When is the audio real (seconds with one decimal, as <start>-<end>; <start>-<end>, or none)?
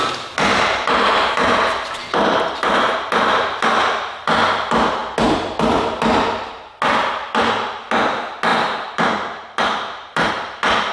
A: 0.0-8.5; 10.3-10.9